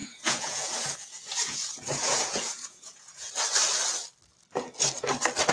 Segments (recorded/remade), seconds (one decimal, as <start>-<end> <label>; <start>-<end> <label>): 0.0-3.3 remade; 3.3-5.5 recorded